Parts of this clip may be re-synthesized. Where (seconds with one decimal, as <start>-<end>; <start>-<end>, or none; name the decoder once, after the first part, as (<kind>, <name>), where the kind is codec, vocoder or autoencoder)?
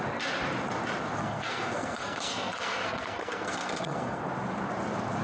1.2-4.2 (codec, SNAC)